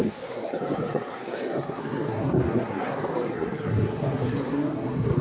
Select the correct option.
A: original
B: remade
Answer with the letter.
B